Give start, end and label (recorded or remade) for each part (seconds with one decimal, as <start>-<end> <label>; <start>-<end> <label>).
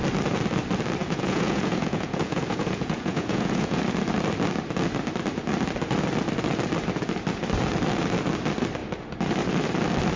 0.0-1.0 recorded; 1.0-3.8 remade; 3.8-10.2 recorded